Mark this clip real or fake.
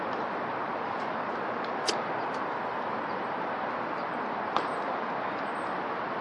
real